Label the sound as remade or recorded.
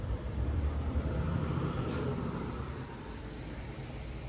remade